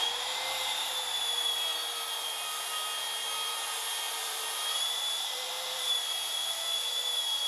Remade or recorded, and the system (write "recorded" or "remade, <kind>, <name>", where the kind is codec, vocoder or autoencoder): remade, vocoder, BigVGAN v2